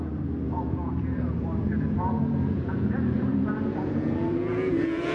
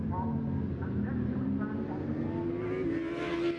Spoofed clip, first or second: first